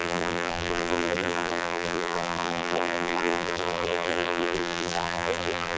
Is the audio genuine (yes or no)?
no